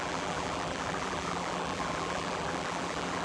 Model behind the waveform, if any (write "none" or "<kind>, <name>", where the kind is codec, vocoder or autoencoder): vocoder, BigVGAN v2